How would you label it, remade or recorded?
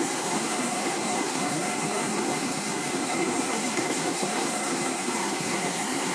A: remade